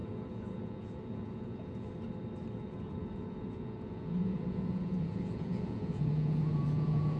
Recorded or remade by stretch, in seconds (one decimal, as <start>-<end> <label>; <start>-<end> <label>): 0.0-1.9 remade; 1.9-2.6 recorded; 2.6-7.2 remade